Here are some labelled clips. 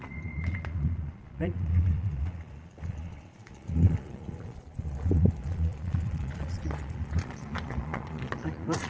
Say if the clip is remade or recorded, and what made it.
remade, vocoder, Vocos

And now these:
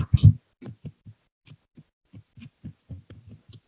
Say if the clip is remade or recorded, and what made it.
recorded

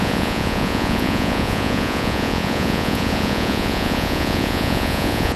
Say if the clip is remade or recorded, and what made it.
remade, vocoder, Vocos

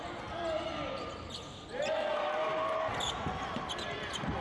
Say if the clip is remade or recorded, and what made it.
recorded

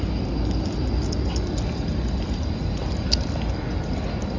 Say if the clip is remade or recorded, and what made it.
recorded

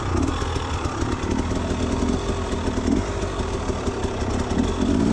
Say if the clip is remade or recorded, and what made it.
recorded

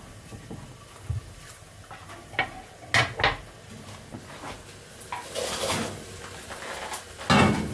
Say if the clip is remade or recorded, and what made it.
recorded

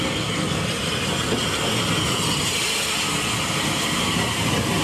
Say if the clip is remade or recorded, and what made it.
recorded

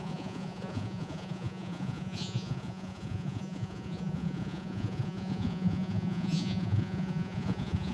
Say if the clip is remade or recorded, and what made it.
remade, vocoder, Vocos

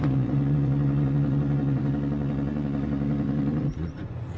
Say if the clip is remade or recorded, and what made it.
remade, vocoder, Vocos